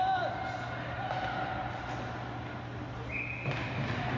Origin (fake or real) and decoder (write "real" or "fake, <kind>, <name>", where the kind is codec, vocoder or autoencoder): real